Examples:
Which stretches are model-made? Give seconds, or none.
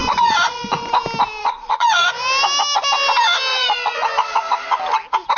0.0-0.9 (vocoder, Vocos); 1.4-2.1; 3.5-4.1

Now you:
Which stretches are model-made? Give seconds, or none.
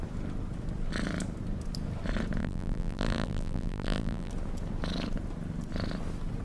2.4-4.3 (vocoder, BigVGAN v2)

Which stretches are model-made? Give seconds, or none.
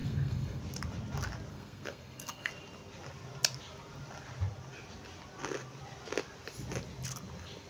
0.0-0.6 (codec, SNAC); 1.5-2.5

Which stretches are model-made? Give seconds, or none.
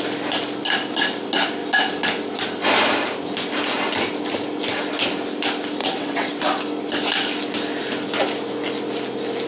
5.8-6.4 (vocoder, WaveNeXt)